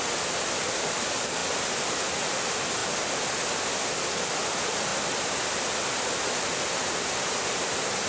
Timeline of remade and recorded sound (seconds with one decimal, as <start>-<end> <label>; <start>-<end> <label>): 0.0-8.1 recorded

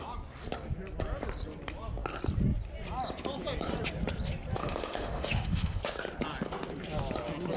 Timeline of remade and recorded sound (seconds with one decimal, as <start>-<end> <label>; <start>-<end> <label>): 0.0-4.6 recorded; 4.6-5.8 remade; 5.8-7.6 recorded